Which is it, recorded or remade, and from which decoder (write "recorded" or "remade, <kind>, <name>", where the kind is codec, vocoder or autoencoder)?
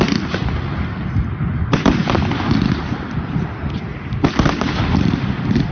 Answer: recorded